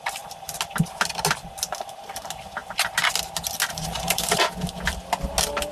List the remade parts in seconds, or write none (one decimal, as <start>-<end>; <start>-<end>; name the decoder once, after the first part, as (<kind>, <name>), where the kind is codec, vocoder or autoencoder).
3.7-4.4 (vocoder, BigVGAN v2)